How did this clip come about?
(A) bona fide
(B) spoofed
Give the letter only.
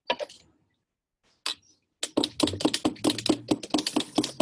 A